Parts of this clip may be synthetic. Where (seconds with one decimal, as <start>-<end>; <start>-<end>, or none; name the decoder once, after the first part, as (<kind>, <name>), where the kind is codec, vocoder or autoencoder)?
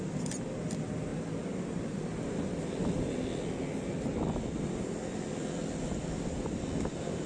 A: none